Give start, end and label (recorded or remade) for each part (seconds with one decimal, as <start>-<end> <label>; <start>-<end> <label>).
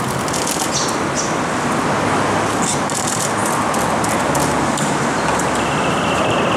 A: 0.0-6.6 recorded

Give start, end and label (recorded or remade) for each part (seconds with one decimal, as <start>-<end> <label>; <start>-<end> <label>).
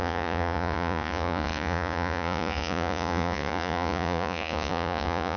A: 0.0-5.4 remade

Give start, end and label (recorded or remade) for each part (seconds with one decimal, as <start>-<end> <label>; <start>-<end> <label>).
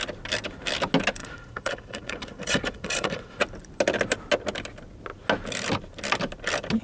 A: 0.0-1.2 recorded; 1.2-3.4 remade; 3.4-6.8 recorded